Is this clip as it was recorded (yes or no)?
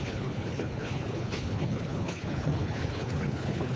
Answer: no